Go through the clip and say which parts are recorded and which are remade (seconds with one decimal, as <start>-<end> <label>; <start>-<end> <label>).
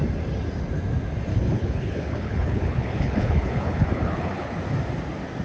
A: 0.0-1.3 recorded; 1.3-4.5 remade; 4.5-5.4 recorded